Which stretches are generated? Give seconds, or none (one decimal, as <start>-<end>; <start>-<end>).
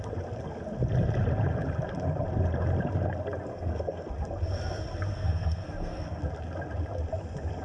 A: 3.5-4.1; 5.1-6.2